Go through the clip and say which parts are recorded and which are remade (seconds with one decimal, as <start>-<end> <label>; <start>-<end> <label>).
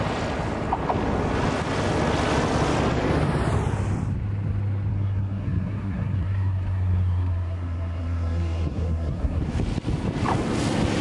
0.0-4.9 recorded; 4.9-9.4 remade; 9.4-11.0 recorded